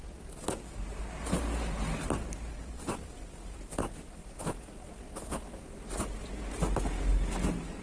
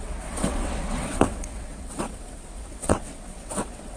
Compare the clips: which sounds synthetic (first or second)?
second